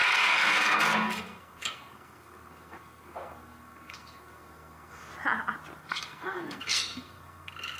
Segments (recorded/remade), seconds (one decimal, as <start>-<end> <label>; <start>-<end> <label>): 0.0-5.1 remade; 5.1-5.8 recorded; 5.8-7.8 remade